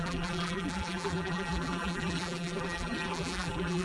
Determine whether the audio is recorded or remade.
remade